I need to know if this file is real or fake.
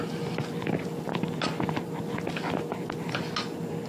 real